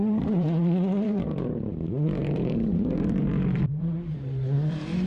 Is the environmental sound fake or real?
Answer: fake